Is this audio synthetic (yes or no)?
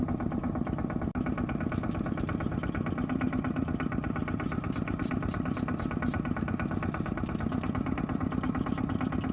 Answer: no